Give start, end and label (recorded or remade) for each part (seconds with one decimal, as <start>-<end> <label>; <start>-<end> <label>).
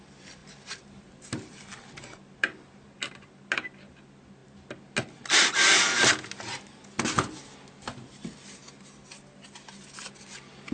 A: 0.0-10.7 recorded